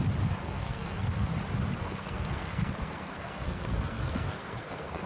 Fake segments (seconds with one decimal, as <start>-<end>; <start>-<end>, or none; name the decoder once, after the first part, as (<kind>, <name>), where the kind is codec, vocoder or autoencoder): 0.4-1.3 (codec, SNAC); 1.8-5.1